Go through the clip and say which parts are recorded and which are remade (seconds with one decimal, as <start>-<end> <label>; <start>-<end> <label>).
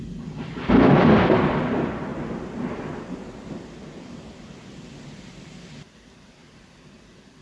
0.0-2.1 remade; 2.1-4.1 recorded; 4.1-7.4 remade